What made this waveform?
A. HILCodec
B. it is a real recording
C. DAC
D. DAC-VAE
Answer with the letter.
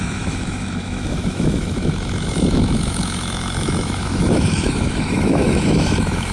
D